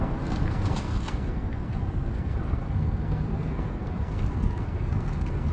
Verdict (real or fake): fake